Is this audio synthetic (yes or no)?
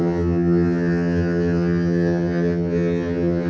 yes